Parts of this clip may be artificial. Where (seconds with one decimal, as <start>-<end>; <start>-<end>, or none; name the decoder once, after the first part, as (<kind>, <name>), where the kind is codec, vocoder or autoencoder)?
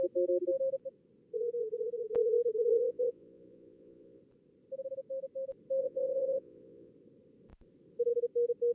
2.7-4.2 (vocoder, Vocos); 5.8-6.9